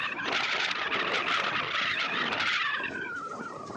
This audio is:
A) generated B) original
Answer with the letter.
B